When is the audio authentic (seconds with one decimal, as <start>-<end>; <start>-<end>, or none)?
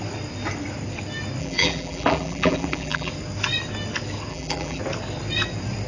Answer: 0.0-1.4; 3.1-4.3; 4.8-5.9